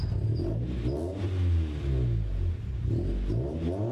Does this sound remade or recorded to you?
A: recorded